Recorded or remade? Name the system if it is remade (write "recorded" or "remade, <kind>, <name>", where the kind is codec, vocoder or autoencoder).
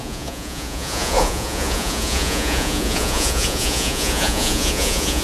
remade, vocoder, Vocos